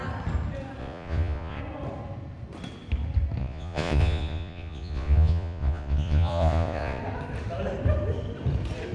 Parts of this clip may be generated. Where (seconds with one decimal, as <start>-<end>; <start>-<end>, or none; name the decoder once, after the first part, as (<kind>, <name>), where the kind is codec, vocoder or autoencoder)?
0.8-1.6 (vocoder, Vocos); 3.4-7.0